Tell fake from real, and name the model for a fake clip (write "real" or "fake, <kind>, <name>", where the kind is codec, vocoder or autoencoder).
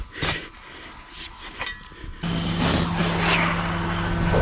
real